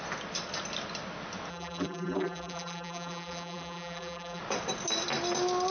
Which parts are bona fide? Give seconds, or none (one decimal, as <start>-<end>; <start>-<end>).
0.0-1.5; 4.4-5.7